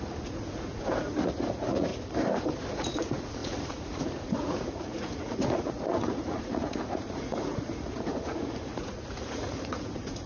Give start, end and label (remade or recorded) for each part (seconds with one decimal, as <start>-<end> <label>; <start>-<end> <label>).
0.0-1.9 remade; 1.9-2.7 recorded; 2.7-10.3 remade